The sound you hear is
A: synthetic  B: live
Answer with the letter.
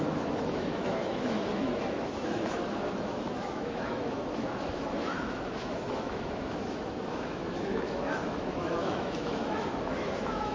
A